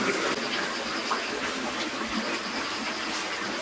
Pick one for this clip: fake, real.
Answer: real